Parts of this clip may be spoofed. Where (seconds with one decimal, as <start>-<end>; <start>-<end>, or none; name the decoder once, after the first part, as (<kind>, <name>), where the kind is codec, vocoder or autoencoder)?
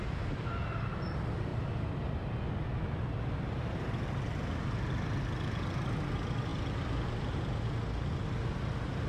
none